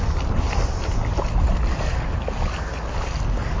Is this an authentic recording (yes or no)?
yes